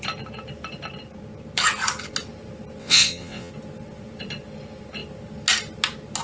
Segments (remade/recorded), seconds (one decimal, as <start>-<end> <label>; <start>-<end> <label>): 0.0-2.8 recorded; 2.8-3.5 remade; 3.5-6.2 recorded

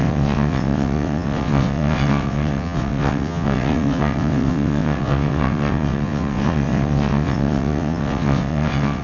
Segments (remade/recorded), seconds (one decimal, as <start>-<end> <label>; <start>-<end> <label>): 0.0-9.0 remade

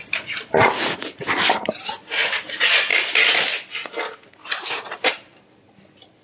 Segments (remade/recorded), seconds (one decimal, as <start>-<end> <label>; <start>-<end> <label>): 0.0-6.2 recorded

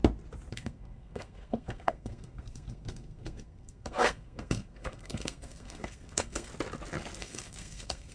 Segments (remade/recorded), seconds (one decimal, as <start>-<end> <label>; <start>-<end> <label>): 0.0-0.5 recorded; 0.5-6.5 remade; 6.5-7.2 recorded; 7.2-8.1 remade

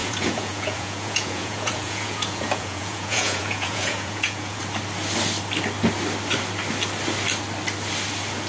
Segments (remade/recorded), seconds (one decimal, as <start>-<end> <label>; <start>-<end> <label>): 0.0-4.6 remade; 4.6-8.5 recorded

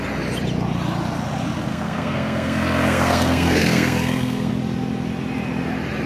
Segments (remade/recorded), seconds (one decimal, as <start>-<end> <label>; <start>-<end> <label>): 0.0-1.7 recorded; 1.7-4.5 remade; 4.5-6.1 recorded

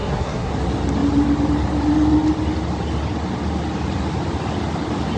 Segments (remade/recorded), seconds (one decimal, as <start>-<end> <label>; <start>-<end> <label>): 0.0-0.5 remade; 0.5-5.2 recorded